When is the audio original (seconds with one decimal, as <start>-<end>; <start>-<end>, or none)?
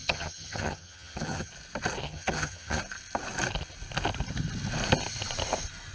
1.5-2.0; 2.8-5.9